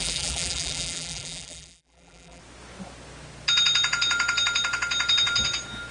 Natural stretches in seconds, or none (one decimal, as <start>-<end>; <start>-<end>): 2.4-5.9